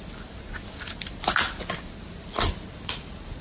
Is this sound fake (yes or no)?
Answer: no